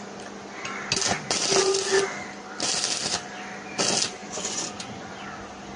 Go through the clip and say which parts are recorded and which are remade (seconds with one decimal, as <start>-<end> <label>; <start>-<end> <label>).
0.0-4.2 recorded; 4.2-5.1 remade; 5.1-5.8 recorded